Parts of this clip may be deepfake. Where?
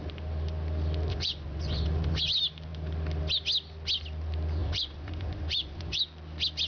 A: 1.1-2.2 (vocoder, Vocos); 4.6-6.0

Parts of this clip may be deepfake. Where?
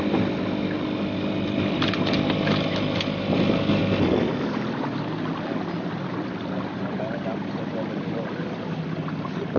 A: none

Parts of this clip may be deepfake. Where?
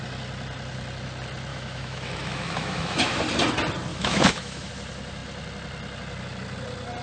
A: 1.5-3.2 (autoencoder, DAC-VAE); 3.9-4.7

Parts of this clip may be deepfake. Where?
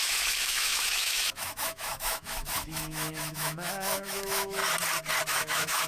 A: 0.0-4.6 (autoencoder, DAC-VAE); 5.3-5.9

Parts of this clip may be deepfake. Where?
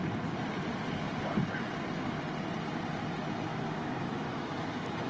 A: 3.5-5.1 (autoencoder, DAC-VAE)